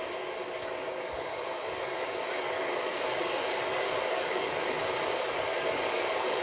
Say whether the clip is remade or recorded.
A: remade